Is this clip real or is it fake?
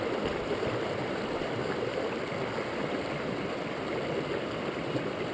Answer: real